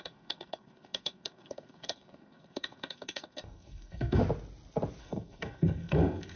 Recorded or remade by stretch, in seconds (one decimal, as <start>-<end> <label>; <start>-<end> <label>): 0.0-4.2 remade; 4.2-5.0 recorded; 5.0-6.4 remade